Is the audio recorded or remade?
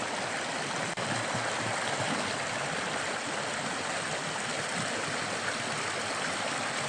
recorded